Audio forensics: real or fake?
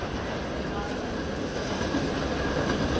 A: real